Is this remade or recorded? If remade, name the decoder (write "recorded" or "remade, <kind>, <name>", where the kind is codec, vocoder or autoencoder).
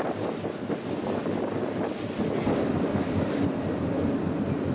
recorded